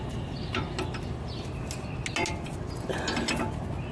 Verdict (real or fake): real